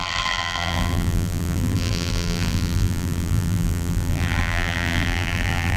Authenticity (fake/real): fake